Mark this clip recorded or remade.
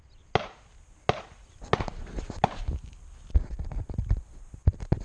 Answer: recorded